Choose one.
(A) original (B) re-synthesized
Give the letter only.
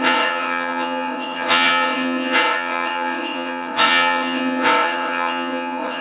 B